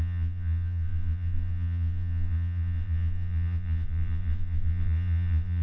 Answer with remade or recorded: remade